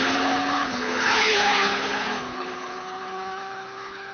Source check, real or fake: fake